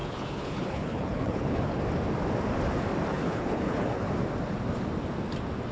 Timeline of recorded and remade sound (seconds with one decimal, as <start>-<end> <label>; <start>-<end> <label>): 0.0-1.8 remade; 1.8-3.1 recorded; 3.1-4.1 remade; 4.1-5.7 recorded